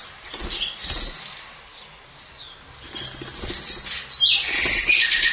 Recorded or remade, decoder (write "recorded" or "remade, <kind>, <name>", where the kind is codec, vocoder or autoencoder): recorded